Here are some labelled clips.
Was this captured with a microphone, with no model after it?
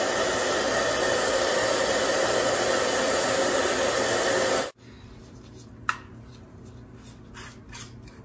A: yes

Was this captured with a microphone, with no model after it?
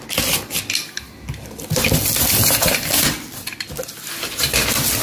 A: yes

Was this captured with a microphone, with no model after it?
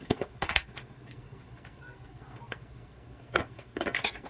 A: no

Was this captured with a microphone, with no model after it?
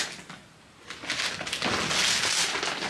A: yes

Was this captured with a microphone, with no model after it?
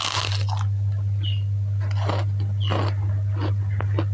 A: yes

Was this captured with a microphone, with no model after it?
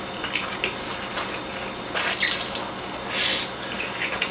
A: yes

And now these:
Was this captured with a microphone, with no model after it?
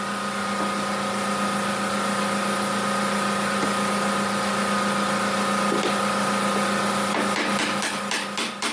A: yes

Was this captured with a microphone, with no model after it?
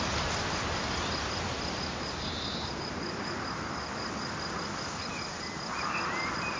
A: yes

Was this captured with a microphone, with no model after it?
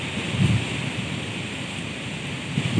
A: yes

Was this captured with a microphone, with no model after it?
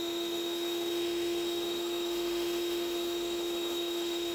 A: no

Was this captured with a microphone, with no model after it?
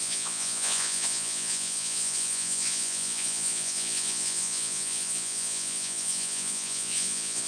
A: no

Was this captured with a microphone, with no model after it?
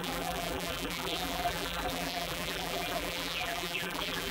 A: no